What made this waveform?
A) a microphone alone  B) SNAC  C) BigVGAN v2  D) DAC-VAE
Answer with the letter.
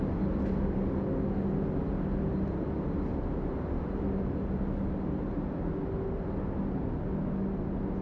A